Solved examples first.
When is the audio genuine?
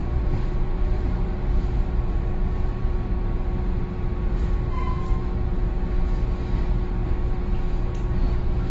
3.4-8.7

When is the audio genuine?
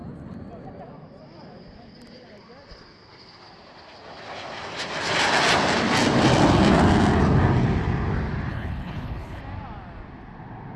0.0-8.5; 9.4-10.8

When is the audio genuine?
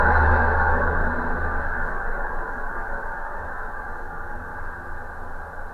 1.0-1.6; 4.5-5.7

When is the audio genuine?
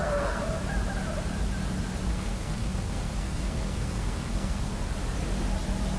0.4-2.1; 4.7-6.0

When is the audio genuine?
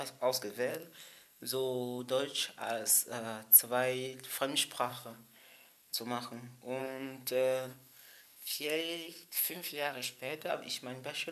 0.0-0.7; 2.0-4.9; 6.0-6.8; 10.5-11.3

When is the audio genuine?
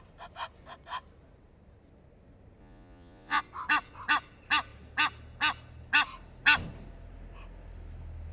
0.0-2.6; 3.4-8.3